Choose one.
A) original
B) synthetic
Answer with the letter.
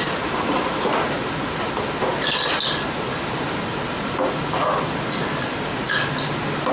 A